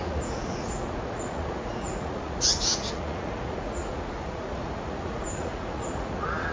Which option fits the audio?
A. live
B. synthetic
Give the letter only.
B